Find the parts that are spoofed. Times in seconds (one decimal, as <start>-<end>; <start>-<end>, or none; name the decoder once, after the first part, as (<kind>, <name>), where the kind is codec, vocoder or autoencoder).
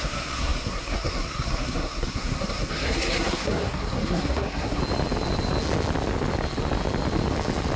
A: 0.0-4.8 (codec, SNAC)